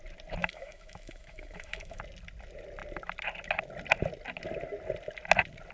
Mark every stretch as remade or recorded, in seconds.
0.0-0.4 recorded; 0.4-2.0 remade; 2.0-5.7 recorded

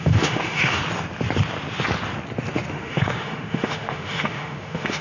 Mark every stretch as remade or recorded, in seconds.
0.0-0.8 remade; 0.8-2.7 recorded; 2.7-5.0 remade